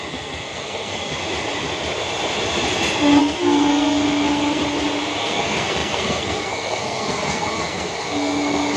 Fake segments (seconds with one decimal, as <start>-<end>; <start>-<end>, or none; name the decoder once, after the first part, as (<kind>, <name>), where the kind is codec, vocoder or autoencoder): 0.0-1.2 (codec, SNAC); 3.2-4.6; 5.2-8.8